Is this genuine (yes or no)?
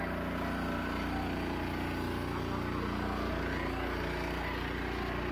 yes